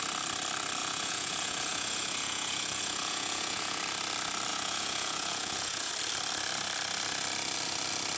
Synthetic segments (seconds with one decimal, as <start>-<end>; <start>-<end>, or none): 0.8-3.8; 4.5-5.9